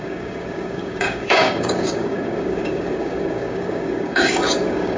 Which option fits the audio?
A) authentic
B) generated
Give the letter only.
B